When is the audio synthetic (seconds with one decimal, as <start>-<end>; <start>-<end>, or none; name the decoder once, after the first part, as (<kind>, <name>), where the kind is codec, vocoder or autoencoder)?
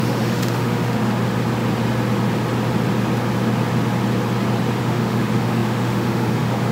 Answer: 0.0-1.0 (autoencoder, DAC-VAE); 4.8-6.7